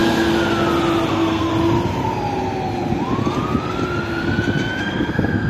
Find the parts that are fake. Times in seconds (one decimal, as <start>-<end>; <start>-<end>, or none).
1.1-1.5; 4.8-5.5